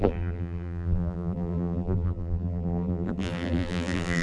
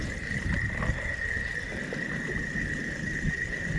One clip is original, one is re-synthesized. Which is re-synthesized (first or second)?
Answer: first